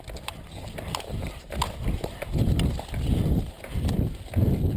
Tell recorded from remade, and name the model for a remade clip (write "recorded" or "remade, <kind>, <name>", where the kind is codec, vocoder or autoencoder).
recorded